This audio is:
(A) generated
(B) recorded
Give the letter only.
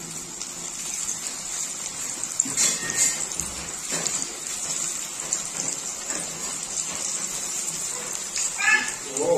B